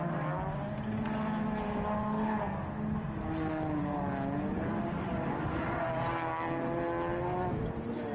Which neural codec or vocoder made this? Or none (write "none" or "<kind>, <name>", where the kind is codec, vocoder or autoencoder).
none